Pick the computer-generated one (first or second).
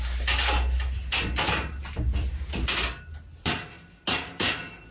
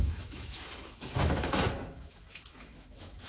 second